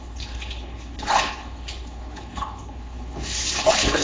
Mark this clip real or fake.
fake